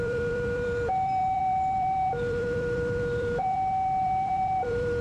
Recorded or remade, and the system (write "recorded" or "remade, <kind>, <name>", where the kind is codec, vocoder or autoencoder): remade, vocoder, BigVGAN v2